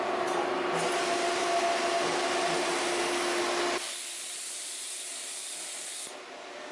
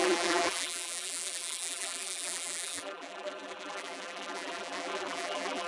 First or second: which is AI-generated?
second